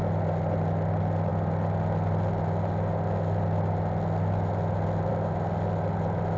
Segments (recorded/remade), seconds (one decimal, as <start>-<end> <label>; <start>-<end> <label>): 0.0-6.4 recorded